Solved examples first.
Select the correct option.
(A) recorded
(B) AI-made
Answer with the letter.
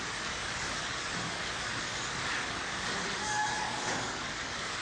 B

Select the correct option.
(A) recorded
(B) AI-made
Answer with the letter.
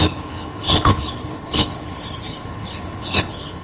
B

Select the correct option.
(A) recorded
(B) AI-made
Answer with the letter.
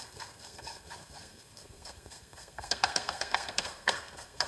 B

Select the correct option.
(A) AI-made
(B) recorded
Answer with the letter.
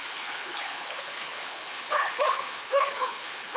A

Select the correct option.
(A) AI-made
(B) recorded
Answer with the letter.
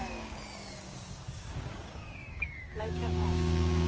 A